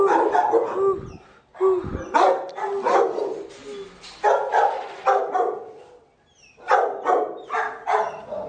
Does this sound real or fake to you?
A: real